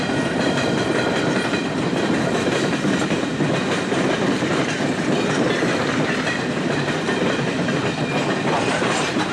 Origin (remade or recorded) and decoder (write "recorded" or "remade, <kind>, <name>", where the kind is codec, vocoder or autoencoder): remade, vocoder, BigVGAN v2